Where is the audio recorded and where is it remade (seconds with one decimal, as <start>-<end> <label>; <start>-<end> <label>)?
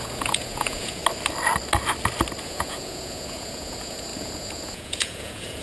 0.0-1.0 remade; 1.0-2.4 recorded; 2.4-5.6 remade